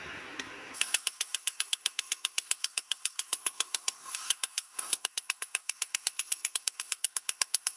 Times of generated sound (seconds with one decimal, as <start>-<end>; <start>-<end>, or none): 0.0-7.8